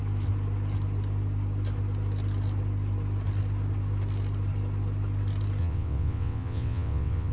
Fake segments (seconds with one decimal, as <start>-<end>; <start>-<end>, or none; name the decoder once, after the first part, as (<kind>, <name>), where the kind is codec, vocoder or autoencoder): 5.6-7.3 (vocoder, WaveNeXt)